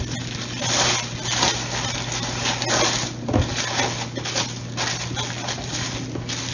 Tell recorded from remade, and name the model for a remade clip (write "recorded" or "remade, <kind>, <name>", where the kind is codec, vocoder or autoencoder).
recorded